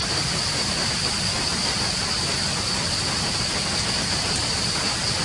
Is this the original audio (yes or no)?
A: yes